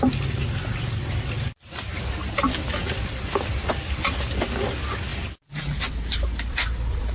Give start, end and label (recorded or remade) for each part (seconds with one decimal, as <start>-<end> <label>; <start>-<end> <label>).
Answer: 0.0-7.1 recorded